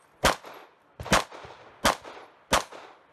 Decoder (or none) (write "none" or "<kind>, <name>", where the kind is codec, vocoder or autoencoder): none